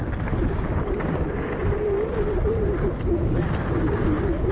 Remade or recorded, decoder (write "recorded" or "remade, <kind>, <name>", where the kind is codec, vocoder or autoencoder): recorded